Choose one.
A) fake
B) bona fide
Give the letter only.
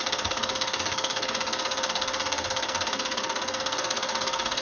A